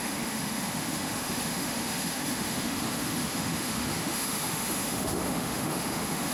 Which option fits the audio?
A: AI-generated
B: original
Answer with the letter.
A